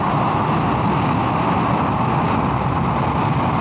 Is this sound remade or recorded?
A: recorded